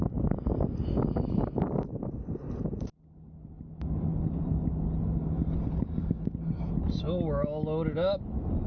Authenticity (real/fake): real